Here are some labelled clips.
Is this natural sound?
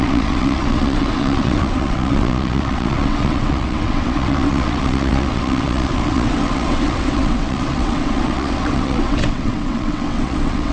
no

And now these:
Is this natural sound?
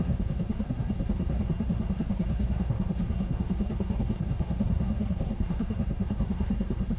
no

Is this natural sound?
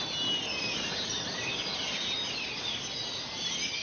yes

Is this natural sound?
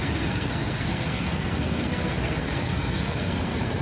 no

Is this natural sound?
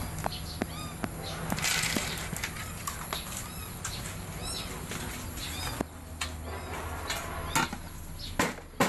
yes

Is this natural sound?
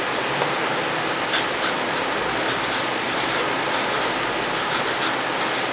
yes